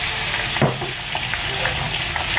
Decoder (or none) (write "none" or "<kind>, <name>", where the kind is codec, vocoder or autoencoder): none